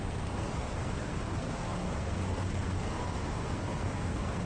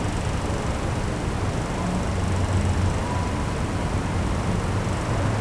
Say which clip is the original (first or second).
second